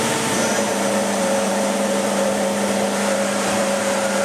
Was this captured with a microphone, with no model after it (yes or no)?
no